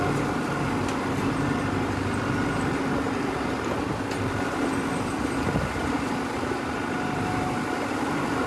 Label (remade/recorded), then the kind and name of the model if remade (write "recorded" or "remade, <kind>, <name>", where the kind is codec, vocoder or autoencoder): recorded